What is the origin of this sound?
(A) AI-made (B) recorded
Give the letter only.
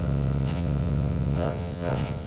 A